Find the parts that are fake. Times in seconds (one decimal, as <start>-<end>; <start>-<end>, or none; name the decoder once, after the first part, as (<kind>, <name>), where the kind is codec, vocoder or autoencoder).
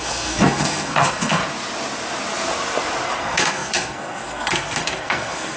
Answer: 0.0-1.4 (codec, SNAC); 3.2-5.6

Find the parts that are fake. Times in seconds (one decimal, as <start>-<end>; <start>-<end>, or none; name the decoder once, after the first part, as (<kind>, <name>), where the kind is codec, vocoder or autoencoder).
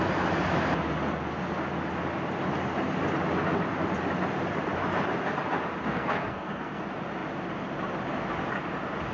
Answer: 5.9-6.8 (codec, SNAC)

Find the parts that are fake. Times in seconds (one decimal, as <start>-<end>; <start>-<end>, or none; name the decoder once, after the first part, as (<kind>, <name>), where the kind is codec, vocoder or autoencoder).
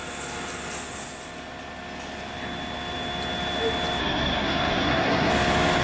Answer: 4.0-5.3 (codec, SNAC)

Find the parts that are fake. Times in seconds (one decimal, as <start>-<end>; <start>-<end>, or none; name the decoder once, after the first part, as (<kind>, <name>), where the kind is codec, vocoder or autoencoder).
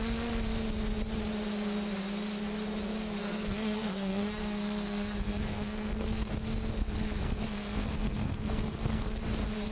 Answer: 3.2-6.3 (codec, SNAC); 6.8-9.2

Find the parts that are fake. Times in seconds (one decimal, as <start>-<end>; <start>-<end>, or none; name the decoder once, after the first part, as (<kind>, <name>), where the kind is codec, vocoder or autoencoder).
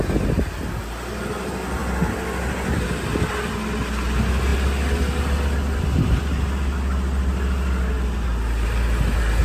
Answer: none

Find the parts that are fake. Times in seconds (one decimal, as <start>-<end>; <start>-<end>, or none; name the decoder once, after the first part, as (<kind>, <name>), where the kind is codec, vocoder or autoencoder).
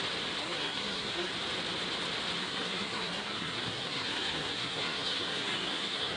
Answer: 0.4-1.3 (codec, SNAC); 2.4-6.2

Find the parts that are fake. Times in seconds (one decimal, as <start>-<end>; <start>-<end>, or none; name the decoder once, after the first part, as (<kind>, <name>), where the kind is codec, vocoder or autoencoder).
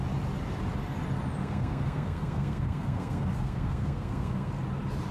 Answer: 1.4-4.5 (codec, SNAC)